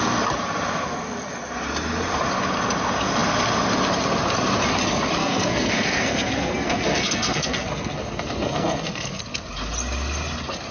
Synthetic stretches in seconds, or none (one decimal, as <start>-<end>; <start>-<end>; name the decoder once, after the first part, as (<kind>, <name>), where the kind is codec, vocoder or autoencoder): 5.2-9.2 (codec, SNAC)